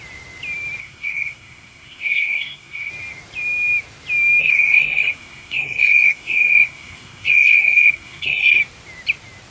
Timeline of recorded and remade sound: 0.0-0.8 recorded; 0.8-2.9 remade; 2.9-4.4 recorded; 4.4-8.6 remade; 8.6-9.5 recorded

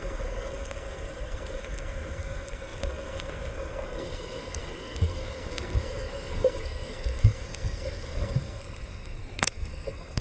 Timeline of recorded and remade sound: 0.0-10.2 remade

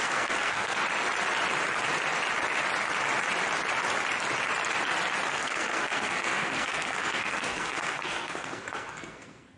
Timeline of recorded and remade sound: 0.0-0.8 remade; 0.8-5.3 recorded; 5.3-9.6 remade

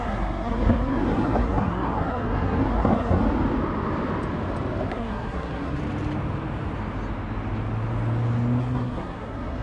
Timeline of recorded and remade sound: 0.0-3.2 remade; 3.2-4.9 recorded; 4.9-5.8 remade; 5.8-8.6 recorded; 8.6-9.6 remade

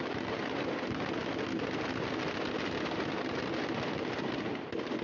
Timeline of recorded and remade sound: 0.0-5.0 recorded

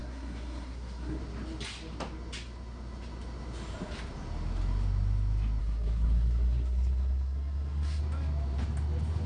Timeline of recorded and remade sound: 0.0-1.2 remade; 1.2-5.6 recorded; 5.6-8.0 remade; 8.0-9.3 recorded

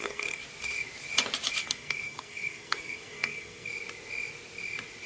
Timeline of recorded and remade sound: 0.0-0.4 remade; 0.4-1.6 recorded; 1.6-3.7 remade; 3.7-5.1 recorded